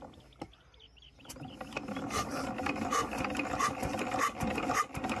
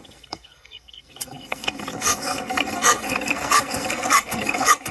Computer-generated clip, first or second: second